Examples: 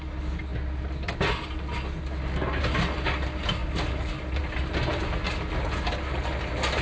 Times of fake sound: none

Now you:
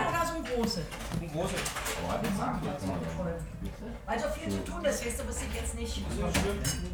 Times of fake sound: 2.4-2.9 (codec, DAC); 4.4-5.0

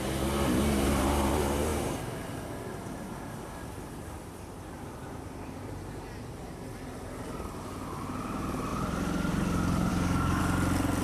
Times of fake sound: 9.9-10.4 (codec, DAC)

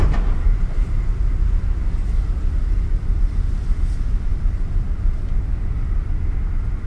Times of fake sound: none

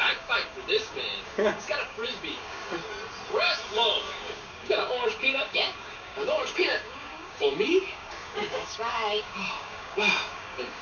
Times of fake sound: 0.0-2.6 (codec, DAC); 3.3-10.8